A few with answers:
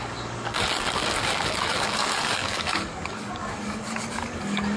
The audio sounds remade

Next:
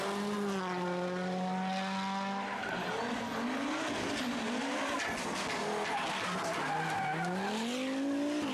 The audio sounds recorded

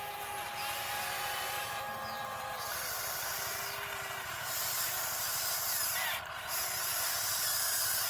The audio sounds recorded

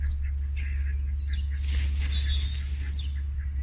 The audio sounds recorded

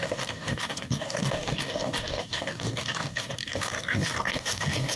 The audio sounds remade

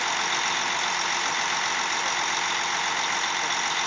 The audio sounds recorded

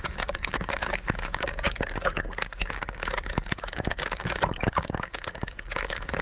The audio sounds remade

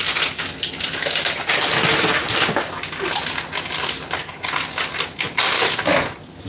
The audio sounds recorded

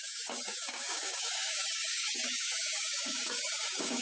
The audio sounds remade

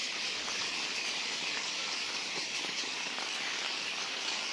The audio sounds remade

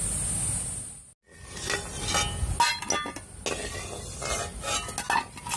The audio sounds recorded